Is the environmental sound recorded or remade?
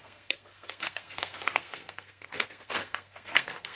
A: remade